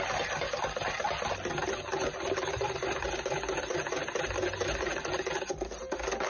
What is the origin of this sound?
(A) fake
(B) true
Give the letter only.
B